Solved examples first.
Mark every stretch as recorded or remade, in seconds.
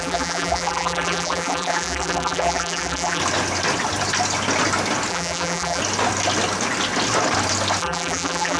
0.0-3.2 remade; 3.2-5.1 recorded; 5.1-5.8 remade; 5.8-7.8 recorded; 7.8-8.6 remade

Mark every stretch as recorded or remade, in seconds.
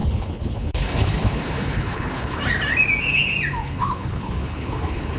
0.0-2.4 remade; 2.4-3.6 recorded; 3.6-5.2 remade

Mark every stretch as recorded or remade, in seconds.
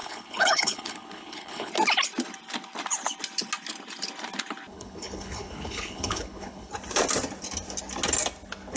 0.0-1.7 remade; 1.7-4.7 recorded; 4.7-6.7 remade; 6.7-8.8 recorded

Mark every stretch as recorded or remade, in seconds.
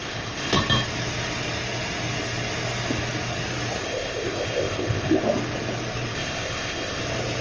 0.0-0.6 remade; 0.6-3.8 recorded; 3.8-5.2 remade; 5.2-6.1 recorded; 6.1-7.0 remade; 7.0-7.4 recorded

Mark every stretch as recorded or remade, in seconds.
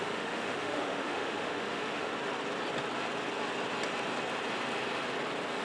0.0-2.1 remade; 2.1-5.6 recorded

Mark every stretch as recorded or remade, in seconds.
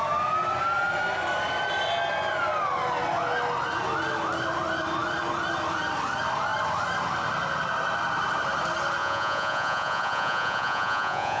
0.0-9.0 recorded; 9.0-11.4 remade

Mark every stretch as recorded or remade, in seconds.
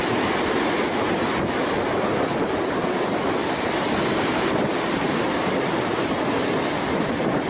0.0-3.4 recorded; 3.4-6.3 remade; 6.3-7.5 recorded